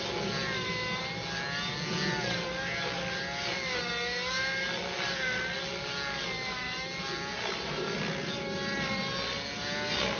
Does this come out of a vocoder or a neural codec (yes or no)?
no